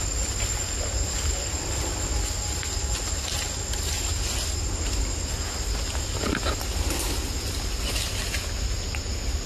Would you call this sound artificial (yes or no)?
no